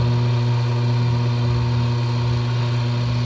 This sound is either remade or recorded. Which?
recorded